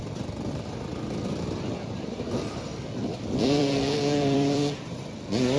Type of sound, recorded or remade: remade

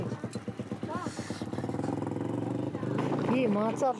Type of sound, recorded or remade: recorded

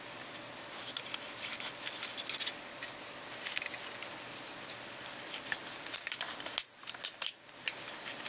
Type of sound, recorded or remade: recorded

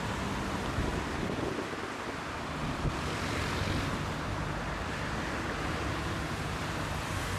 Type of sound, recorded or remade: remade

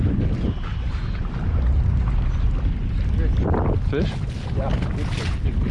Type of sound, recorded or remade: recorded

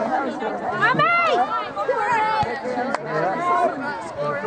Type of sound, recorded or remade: remade